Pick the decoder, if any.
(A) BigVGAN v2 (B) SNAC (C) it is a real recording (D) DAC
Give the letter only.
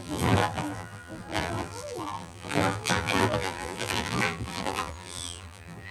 A